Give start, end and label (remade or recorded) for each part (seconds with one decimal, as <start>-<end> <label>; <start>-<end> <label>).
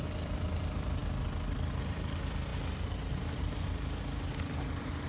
0.0-5.1 recorded